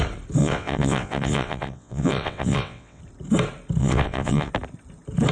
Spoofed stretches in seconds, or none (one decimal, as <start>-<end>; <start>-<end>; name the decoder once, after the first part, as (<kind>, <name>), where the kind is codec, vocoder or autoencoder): 0.4-3.0 (vocoder, WaveNeXt); 3.8-4.5